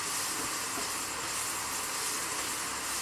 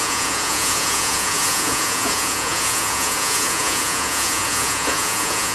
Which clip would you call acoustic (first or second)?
first